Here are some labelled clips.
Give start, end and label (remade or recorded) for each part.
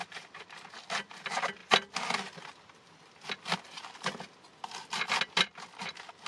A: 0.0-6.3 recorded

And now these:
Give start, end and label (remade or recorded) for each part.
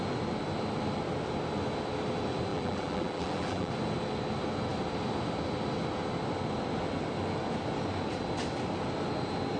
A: 0.0-2.5 recorded; 2.5-3.7 remade; 3.7-9.6 recorded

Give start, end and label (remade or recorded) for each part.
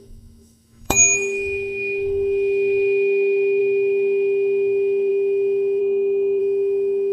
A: 0.0-5.8 remade; 5.8-6.4 recorded; 6.4-7.1 remade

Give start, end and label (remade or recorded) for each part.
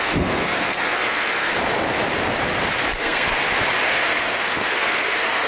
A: 0.0-1.5 remade; 1.5-2.9 recorded; 2.9-3.4 remade; 3.4-3.9 recorded; 3.9-5.5 remade